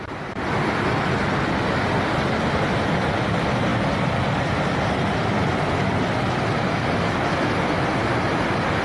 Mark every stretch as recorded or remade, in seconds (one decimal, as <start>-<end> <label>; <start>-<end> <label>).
0.0-8.8 recorded